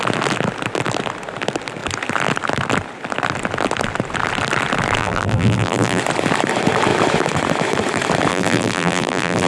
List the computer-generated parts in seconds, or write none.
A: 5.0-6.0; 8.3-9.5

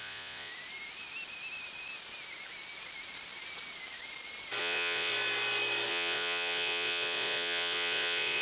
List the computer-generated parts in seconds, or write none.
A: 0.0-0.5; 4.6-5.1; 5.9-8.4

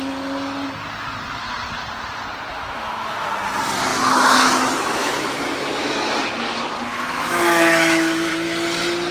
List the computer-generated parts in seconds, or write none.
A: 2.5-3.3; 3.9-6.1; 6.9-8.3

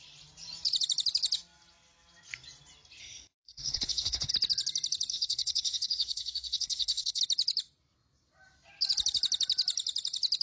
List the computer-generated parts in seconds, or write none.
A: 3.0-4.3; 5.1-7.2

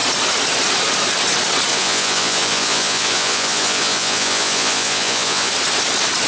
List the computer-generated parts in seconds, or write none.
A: 1.7-5.5